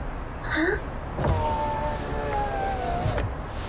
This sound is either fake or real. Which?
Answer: real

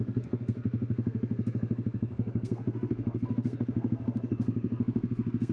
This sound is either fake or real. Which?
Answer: fake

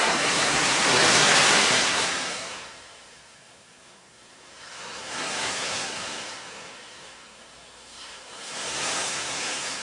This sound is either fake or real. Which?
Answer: fake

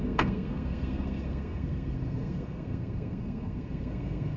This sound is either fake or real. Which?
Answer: fake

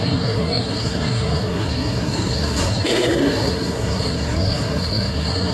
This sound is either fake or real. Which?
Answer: fake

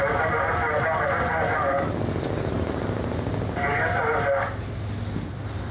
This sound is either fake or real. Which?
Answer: real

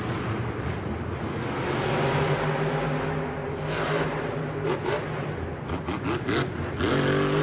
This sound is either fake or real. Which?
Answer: real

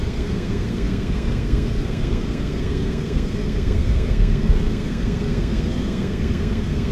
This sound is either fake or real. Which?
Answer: fake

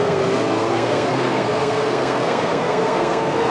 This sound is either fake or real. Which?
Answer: fake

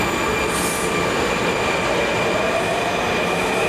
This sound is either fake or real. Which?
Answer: real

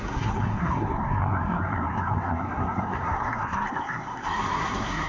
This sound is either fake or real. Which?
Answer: fake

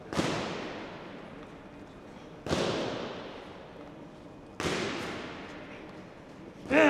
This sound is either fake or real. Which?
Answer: real